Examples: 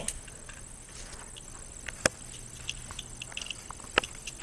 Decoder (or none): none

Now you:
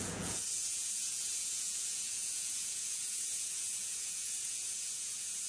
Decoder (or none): vocoder, Vocos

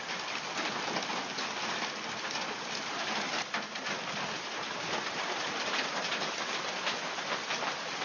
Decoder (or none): none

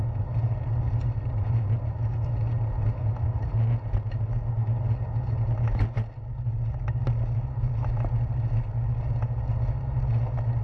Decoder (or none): none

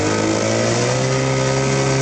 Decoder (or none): none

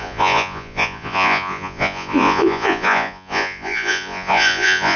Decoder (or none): vocoder, Vocos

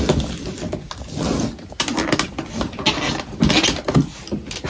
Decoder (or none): none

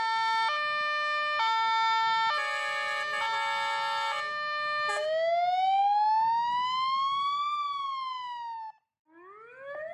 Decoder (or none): none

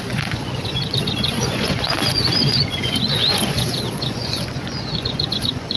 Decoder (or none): vocoder, Vocos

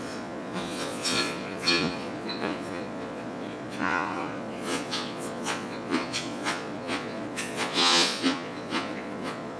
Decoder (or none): vocoder, Vocos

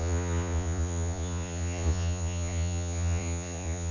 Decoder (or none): vocoder, Vocos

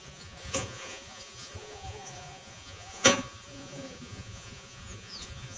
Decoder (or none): vocoder, Vocos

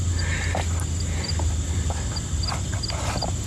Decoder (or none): none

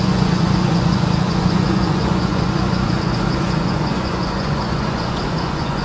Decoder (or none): vocoder, Vocos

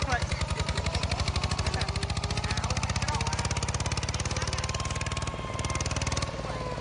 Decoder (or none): none